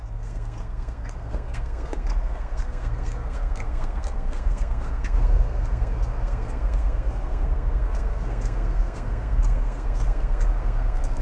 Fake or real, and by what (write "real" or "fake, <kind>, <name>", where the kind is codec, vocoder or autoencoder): fake, codec, SNAC